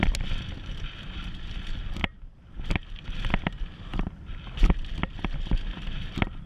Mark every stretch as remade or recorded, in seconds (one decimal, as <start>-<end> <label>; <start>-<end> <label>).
0.0-6.5 recorded

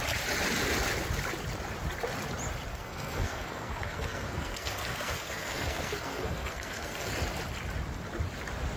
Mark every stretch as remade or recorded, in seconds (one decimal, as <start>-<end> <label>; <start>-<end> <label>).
0.0-2.7 recorded; 2.7-7.1 remade; 7.1-8.8 recorded

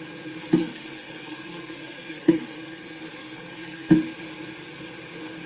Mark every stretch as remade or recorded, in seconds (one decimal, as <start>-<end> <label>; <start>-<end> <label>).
0.0-0.6 recorded; 0.6-3.9 remade; 3.9-5.5 recorded

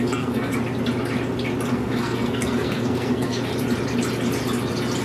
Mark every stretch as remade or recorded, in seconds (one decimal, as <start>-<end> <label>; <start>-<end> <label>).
0.0-0.5 remade; 0.5-1.7 recorded; 1.7-3.5 remade; 3.5-5.0 recorded